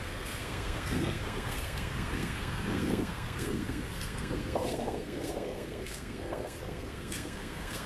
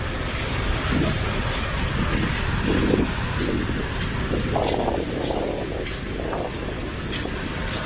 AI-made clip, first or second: first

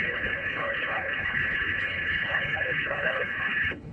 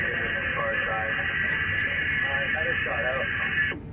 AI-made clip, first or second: first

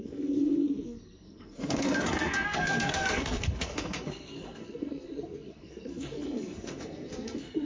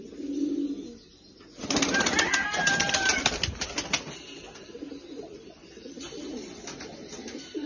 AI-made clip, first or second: first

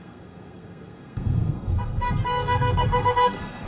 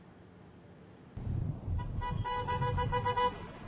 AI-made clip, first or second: first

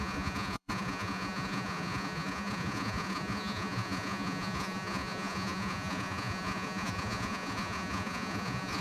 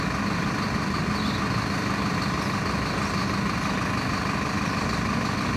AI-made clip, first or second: first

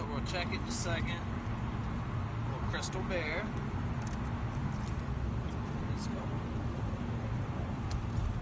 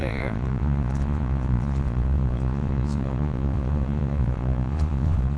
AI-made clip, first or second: second